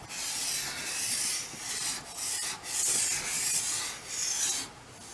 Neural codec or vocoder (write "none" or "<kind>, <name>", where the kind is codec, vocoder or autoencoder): none